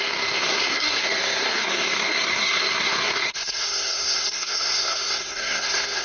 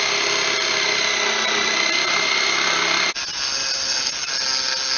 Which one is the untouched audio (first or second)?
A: second